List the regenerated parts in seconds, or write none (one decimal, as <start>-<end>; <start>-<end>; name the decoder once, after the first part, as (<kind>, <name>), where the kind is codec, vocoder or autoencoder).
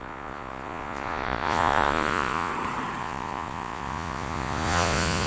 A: 0.0-2.5 (vocoder, Vocos); 3.0-5.3